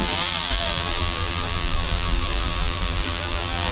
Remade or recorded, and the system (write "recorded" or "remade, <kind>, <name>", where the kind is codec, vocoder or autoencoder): remade, vocoder, BigVGAN v2